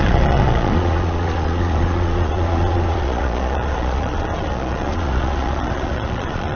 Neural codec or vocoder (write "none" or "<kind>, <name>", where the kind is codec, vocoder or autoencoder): vocoder, Vocos